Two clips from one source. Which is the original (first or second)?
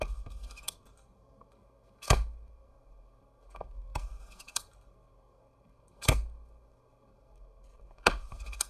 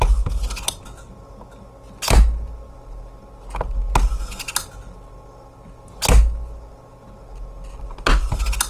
second